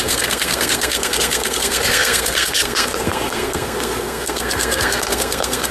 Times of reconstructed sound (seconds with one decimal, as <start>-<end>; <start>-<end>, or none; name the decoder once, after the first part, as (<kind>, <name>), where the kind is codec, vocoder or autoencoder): 0.0-5.7 (codec, SNAC)